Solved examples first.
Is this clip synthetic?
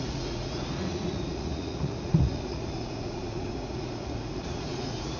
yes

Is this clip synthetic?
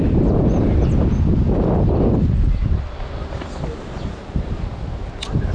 no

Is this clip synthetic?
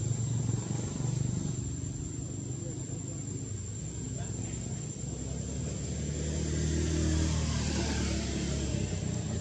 no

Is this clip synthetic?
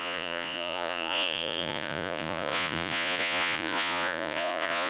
yes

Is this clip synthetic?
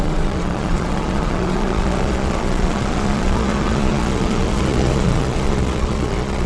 yes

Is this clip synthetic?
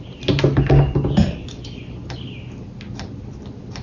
no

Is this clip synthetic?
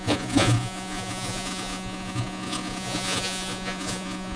yes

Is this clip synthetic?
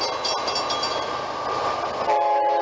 no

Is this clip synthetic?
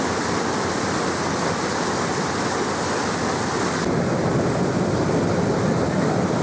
no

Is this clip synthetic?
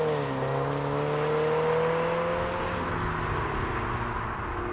no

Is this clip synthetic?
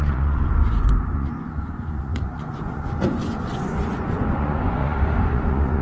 yes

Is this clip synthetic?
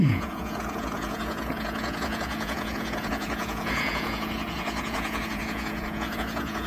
yes